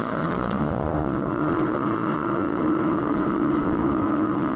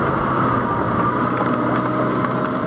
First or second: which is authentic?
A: second